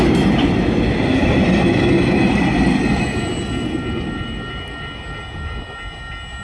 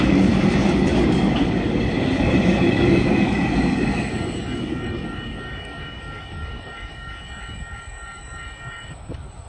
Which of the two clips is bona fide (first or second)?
first